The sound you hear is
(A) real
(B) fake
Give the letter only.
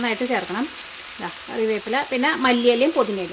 A